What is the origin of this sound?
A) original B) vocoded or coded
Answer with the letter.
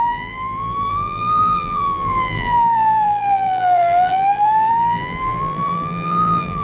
B